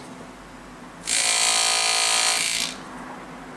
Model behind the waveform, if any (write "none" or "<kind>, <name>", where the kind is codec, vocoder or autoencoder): none